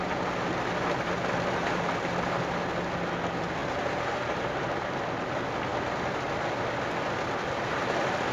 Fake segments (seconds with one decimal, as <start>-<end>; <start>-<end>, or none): 3.6-5.3